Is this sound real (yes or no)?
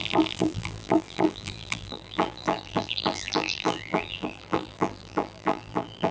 no